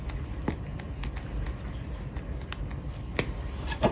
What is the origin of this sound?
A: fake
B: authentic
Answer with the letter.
B